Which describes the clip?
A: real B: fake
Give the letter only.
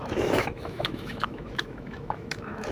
B